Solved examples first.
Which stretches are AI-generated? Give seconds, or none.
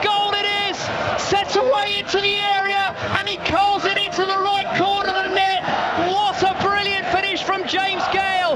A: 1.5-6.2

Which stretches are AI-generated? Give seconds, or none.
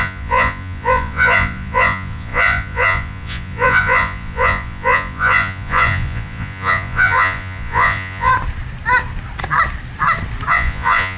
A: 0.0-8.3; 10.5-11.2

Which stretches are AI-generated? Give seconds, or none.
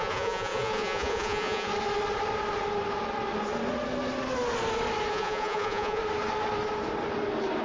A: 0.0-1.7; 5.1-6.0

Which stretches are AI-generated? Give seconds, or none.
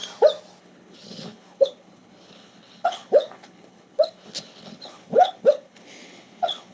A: 0.6-6.7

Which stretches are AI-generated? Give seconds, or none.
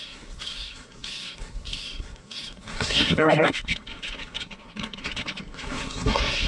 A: 0.0-6.5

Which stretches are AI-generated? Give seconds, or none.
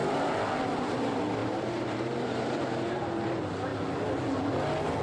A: 1.4-3.0; 3.7-4.2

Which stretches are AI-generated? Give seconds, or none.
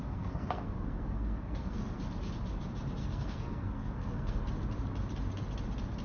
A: 0.0-2.0; 3.0-4.4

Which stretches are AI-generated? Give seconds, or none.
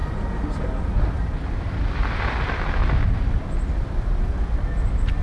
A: 0.0-1.6